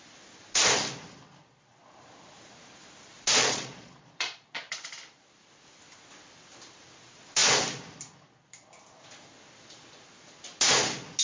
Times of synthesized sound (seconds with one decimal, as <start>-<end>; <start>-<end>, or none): 3.4-4.9